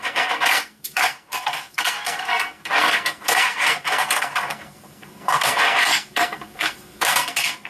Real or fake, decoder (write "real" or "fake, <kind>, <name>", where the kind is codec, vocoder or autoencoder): fake, codec, SNAC